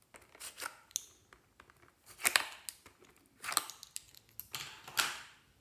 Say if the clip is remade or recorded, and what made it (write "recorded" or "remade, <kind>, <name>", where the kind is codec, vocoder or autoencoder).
recorded